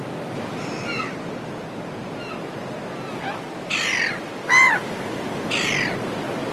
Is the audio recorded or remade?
recorded